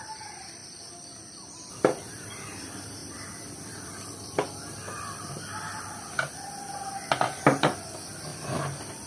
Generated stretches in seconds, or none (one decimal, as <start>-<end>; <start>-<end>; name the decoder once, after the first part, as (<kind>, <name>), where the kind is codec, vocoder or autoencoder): 0.0-8.3 (vocoder, BigVGAN v2)